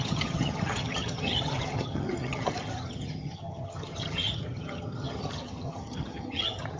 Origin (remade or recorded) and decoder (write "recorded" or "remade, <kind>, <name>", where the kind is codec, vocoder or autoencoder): remade, vocoder, HiFi-GAN